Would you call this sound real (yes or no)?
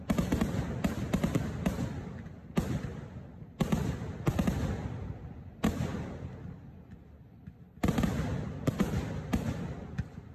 yes